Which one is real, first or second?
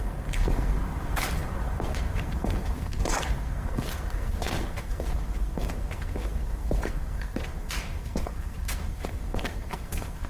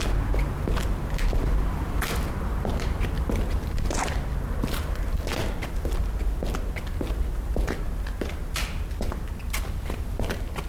second